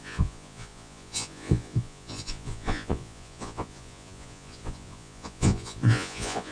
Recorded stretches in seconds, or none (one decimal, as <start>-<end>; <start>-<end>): none